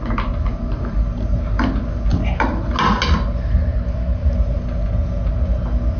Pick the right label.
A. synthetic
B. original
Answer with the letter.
B